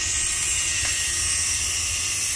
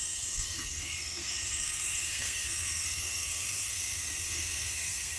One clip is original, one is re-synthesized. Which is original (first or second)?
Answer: first